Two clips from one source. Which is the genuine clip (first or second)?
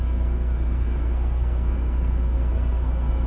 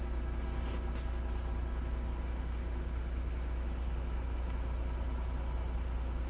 second